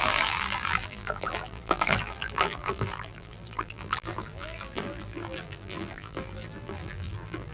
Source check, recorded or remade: remade